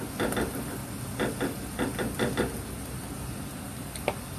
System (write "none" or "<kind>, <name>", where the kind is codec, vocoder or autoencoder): none